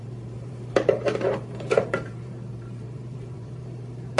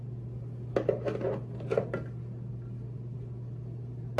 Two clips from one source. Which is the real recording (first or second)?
second